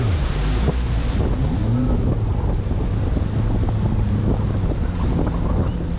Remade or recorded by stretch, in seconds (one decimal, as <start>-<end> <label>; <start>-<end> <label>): 0.0-6.0 recorded